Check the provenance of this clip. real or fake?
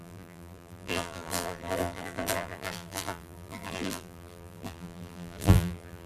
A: fake